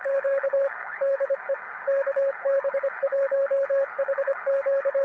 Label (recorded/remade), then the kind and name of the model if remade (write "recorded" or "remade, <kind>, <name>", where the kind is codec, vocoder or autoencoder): remade, codec, HILCodec